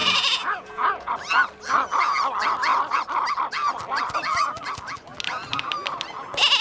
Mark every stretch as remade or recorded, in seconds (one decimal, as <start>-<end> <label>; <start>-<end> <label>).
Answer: 0.0-1.1 remade; 1.1-6.6 recorded